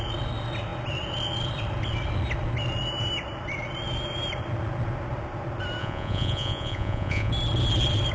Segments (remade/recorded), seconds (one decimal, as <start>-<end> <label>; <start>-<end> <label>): 0.0-5.8 recorded; 5.8-7.3 remade; 7.3-8.1 recorded

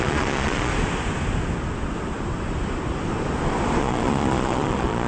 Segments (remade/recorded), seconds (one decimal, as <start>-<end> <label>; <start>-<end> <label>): 0.0-0.7 remade; 0.7-3.8 recorded; 3.8-5.1 remade

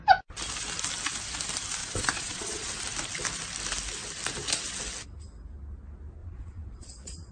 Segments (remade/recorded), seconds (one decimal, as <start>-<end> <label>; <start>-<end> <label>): 0.0-1.8 recorded; 1.8-2.7 remade; 2.7-6.2 recorded; 6.2-7.3 remade

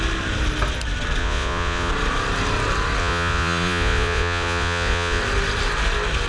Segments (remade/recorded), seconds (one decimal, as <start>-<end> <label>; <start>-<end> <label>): 0.0-1.2 recorded; 1.2-1.9 remade; 1.9-3.0 recorded; 3.0-5.2 remade; 5.2-6.3 recorded

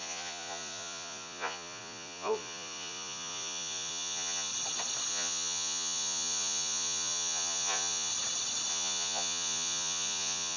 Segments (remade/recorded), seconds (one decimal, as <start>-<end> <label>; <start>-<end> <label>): 0.0-4.5 remade; 4.5-5.1 recorded; 5.1-8.1 remade; 8.1-8.7 recorded; 8.7-10.6 remade

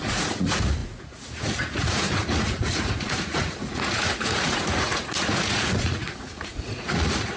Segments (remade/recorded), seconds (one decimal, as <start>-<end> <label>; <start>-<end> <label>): 0.0-7.4 remade

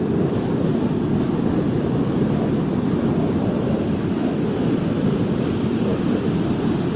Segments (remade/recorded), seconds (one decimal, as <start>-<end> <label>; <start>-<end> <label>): 0.0-7.0 recorded

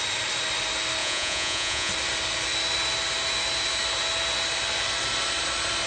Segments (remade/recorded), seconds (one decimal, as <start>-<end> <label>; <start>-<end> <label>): 0.0-1.0 recorded; 1.0-1.9 remade; 1.9-5.9 recorded